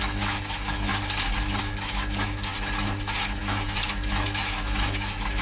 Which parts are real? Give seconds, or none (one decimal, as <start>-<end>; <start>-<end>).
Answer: 0.9-1.6; 2.5-3.4